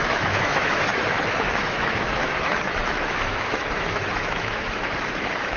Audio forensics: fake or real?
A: fake